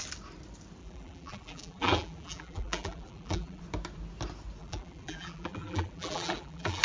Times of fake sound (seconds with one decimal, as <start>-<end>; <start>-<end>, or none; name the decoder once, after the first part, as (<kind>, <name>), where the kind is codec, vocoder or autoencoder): 0.8-3.6 (vocoder, BigVGAN v2); 4.6-6.8

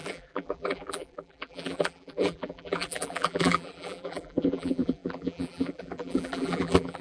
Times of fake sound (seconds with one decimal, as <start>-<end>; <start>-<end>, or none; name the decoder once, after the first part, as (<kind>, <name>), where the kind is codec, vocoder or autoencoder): 0.0-7.0 (vocoder, BigVGAN v2)